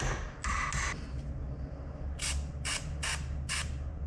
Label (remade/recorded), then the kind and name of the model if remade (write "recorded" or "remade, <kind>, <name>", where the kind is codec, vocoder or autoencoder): recorded